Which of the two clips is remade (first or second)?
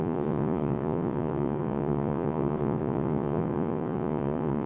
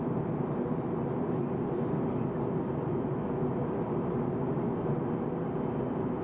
first